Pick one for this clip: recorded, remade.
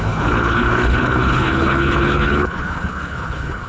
remade